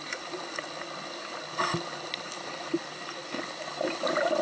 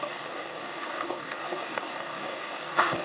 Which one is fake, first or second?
second